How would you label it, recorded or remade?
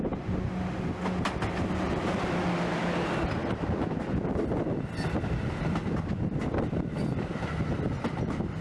recorded